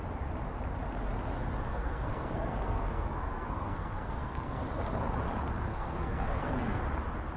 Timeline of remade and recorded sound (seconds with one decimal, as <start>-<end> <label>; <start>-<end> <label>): 0.0-1.7 recorded; 1.7-4.6 remade; 4.6-5.7 recorded; 5.7-6.8 remade; 6.8-7.4 recorded